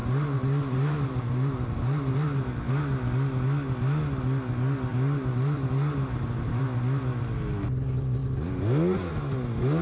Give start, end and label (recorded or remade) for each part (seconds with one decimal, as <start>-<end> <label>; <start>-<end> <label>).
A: 0.0-2.7 remade; 2.7-4.9 recorded; 4.9-6.6 remade; 6.6-9.8 recorded